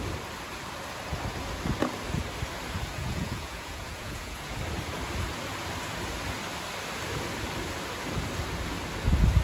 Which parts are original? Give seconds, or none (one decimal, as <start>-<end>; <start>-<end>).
0.0-3.0; 4.6-9.4